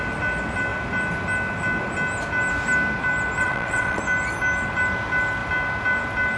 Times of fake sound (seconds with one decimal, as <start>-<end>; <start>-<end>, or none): 3.4-4.0